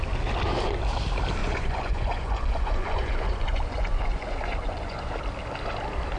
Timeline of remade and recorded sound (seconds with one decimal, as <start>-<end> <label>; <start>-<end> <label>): 0.0-1.4 recorded; 1.4-5.1 remade; 5.1-6.2 recorded